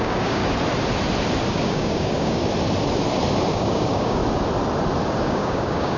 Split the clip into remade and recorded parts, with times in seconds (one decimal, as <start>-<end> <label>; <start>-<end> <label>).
0.0-0.4 remade; 0.4-1.5 recorded; 1.5-2.4 remade; 2.4-3.5 recorded; 3.5-4.2 remade; 4.2-5.2 recorded; 5.2-6.0 remade